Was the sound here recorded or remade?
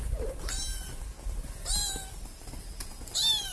recorded